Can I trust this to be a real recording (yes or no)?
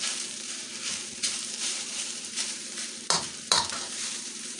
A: no